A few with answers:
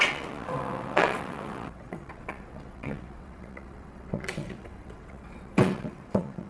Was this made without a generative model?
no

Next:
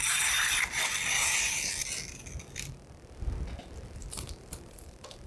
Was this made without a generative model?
no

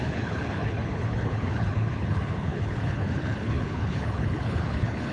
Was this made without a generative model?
no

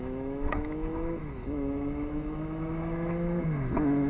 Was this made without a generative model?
no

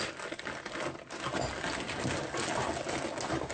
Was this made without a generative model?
yes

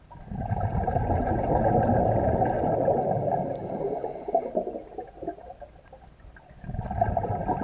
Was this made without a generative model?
yes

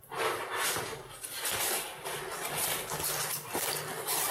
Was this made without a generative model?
yes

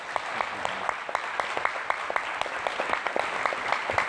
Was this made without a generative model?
yes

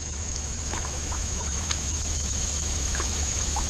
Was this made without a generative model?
no